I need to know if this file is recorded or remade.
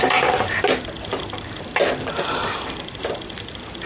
remade